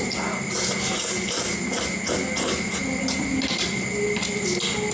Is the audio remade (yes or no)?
no